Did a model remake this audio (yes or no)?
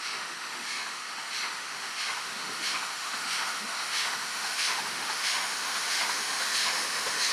yes